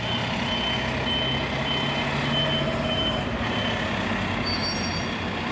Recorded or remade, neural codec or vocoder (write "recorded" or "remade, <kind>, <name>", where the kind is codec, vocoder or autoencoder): recorded